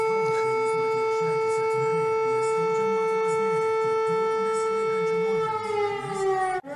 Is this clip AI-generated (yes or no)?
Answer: no